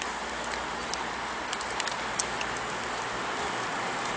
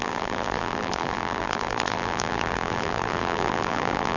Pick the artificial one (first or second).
second